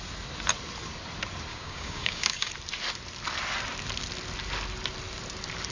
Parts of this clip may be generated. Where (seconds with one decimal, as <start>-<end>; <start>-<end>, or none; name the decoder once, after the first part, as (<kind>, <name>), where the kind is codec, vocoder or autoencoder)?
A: 1.5-2.5 (codec, DAC)